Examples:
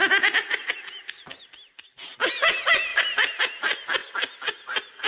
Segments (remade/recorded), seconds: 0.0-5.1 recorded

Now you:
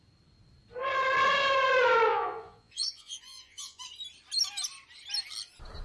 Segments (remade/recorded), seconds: 0.0-2.1 recorded; 2.1-3.8 remade; 3.8-5.8 recorded

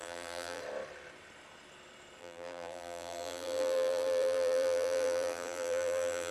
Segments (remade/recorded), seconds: 0.0-0.6 remade; 0.6-2.2 recorded; 2.2-6.3 remade

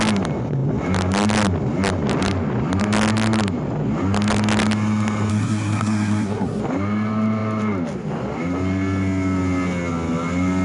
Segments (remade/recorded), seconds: 0.0-5.3 recorded; 5.3-6.6 remade; 6.6-10.6 recorded

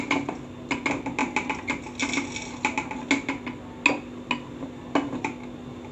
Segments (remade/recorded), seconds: 0.0-5.9 recorded

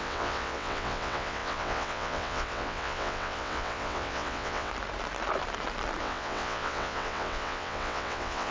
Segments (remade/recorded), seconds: 0.0-4.7 remade; 4.7-6.0 recorded; 6.0-8.5 remade